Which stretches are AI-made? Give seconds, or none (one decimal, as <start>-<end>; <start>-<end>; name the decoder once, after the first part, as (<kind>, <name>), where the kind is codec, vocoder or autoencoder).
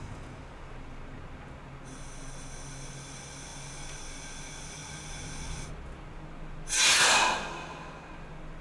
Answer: none